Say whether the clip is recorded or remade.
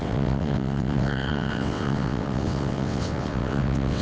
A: remade